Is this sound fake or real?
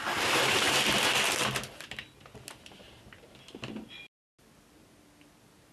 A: real